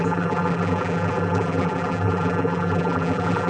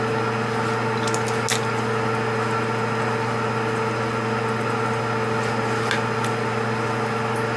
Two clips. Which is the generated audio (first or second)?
first